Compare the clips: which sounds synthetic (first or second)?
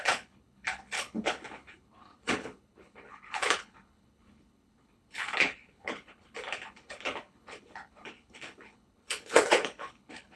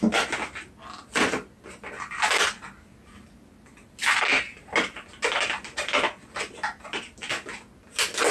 first